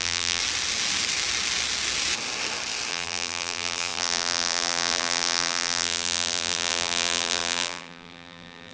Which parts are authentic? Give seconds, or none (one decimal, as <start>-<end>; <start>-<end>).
0.4-2.9